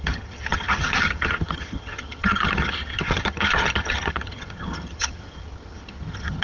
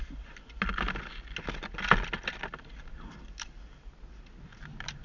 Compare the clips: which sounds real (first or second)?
second